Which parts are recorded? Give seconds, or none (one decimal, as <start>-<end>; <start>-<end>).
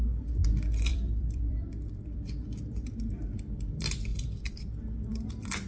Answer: 0.0-0.9; 2.3-4.1; 5.3-5.7